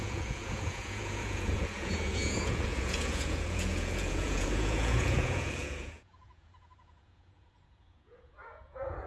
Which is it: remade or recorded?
remade